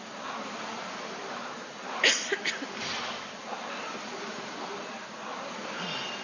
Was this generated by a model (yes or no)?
no